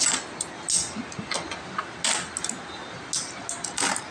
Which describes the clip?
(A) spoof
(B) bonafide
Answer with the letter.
B